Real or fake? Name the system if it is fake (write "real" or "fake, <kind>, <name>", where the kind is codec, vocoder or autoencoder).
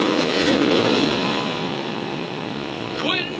fake, vocoder, Vocos